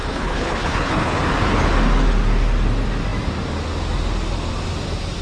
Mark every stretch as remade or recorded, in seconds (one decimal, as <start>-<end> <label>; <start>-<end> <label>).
0.0-1.2 remade; 1.2-5.2 recorded